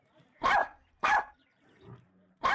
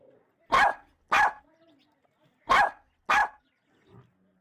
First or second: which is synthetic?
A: first